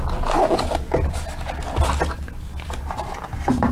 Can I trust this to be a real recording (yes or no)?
yes